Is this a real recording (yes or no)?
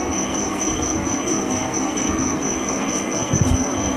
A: no